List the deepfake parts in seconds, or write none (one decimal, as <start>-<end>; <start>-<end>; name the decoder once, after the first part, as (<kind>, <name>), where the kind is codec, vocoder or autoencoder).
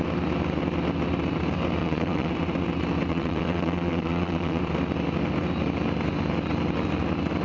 1.8-2.3 (vocoder, WaveNeXt); 3.1-4.6